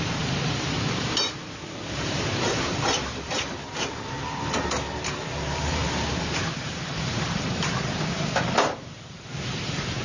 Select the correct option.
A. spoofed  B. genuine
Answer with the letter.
A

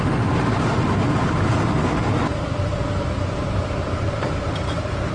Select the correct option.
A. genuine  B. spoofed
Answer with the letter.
B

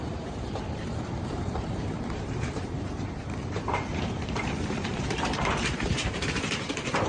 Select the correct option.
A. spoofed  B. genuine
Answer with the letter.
A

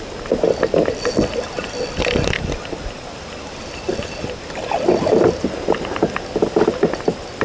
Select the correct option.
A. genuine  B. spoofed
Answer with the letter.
A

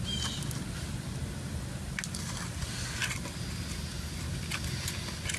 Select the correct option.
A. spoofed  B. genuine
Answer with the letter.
B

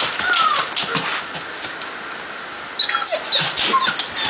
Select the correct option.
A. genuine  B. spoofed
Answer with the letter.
A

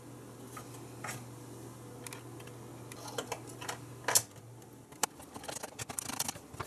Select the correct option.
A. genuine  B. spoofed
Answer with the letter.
A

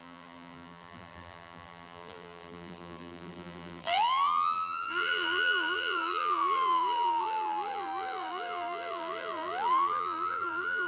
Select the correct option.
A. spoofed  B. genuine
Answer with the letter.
A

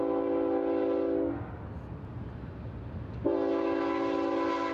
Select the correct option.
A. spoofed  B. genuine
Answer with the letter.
B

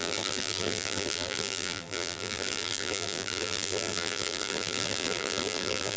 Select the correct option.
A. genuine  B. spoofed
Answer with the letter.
B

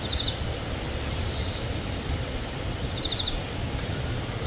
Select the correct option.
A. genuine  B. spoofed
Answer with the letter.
B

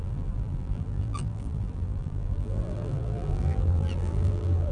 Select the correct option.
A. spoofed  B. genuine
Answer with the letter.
A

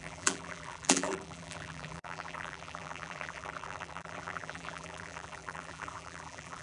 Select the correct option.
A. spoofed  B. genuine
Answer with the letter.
A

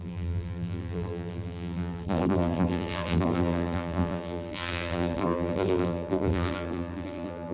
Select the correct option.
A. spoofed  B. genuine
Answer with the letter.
A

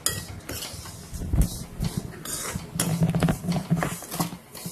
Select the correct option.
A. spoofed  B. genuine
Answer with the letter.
B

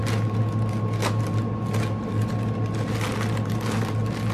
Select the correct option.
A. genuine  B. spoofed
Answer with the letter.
A